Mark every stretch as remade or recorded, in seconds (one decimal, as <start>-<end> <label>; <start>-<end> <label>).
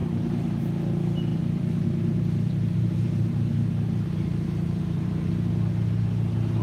0.0-0.6 remade; 0.6-1.3 recorded; 1.3-5.3 remade; 5.3-6.6 recorded